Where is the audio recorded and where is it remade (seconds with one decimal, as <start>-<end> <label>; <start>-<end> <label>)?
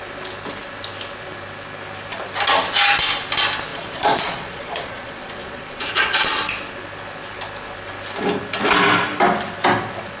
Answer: 0.0-3.7 recorded; 3.7-6.4 remade; 6.4-10.2 recorded